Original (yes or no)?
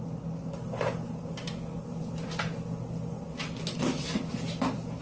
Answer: yes